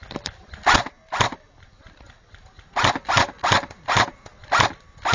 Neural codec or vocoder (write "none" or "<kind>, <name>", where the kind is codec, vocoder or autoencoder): none